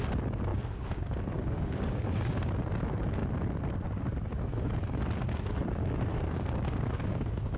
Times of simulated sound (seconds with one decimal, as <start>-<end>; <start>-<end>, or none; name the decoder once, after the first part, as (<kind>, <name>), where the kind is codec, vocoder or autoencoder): 0.5-2.3 (codec, DAC); 6.1-7.6